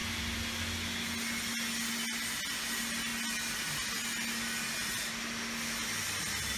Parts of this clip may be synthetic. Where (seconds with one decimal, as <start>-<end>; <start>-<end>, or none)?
none